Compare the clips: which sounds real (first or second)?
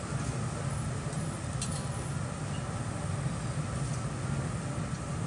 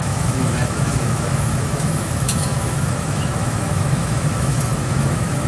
first